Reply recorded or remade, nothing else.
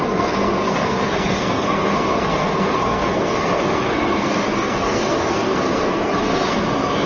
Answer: remade